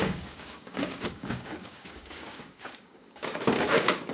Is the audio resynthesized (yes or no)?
yes